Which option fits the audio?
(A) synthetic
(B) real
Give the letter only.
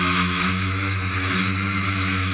A